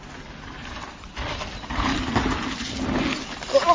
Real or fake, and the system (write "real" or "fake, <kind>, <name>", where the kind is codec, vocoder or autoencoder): real